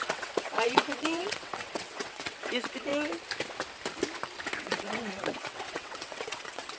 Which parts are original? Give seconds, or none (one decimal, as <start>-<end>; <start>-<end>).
2.9-4.5